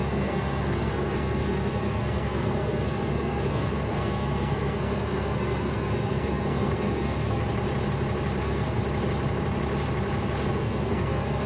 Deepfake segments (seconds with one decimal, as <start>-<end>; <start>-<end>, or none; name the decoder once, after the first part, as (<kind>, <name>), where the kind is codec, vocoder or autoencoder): 0.0-7.4 (codec, SNAC); 8.4-8.8; 10.5-11.5